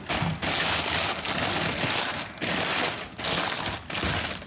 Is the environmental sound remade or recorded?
recorded